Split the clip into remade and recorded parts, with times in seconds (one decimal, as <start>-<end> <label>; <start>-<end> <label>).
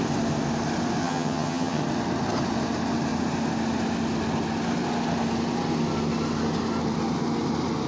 0.0-1.0 recorded; 1.0-1.8 remade; 1.8-7.9 recorded